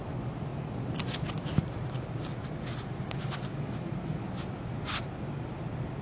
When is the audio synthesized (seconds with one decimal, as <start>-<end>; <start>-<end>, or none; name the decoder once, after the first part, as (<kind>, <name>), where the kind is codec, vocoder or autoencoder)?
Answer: none